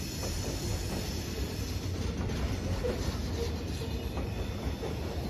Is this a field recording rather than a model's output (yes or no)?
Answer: yes